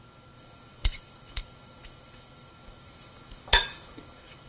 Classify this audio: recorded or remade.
remade